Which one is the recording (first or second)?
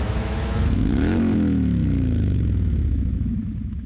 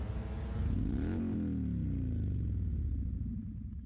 second